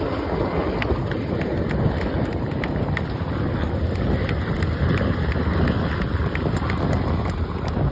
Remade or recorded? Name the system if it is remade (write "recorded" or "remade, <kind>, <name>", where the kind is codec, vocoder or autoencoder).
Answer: recorded